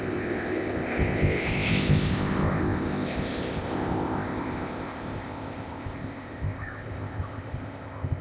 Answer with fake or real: fake